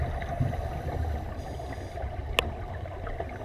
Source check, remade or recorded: recorded